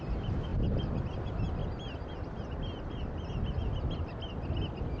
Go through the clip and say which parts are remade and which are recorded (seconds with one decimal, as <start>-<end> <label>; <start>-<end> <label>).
0.0-5.0 recorded